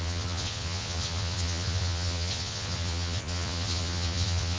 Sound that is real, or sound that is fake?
fake